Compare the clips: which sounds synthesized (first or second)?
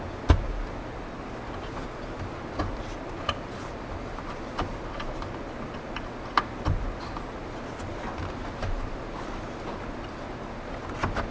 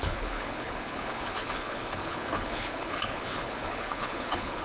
second